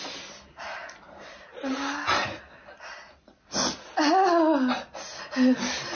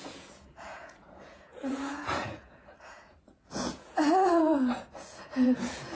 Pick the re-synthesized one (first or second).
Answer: second